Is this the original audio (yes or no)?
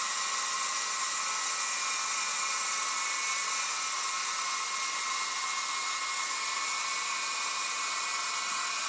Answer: yes